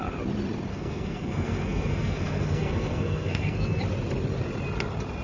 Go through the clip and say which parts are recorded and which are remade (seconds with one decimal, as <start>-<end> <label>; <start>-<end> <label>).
0.0-0.7 recorded; 0.7-3.8 remade; 3.8-5.2 recorded